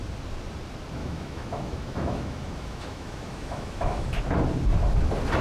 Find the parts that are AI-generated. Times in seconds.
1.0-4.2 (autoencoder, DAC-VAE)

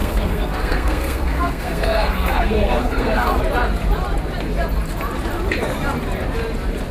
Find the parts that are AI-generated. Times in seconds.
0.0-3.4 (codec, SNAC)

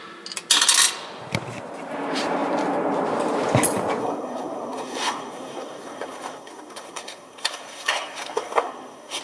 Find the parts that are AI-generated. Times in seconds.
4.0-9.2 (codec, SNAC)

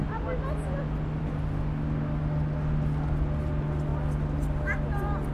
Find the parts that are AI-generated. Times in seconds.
none

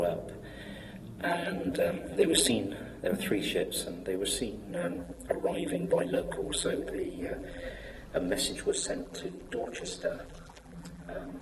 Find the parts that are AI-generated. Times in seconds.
1.2-2.5 (vocoder, BigVGAN v2); 4.7-7.7; 8.7-11.4